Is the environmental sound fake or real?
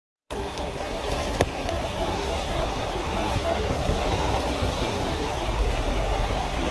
fake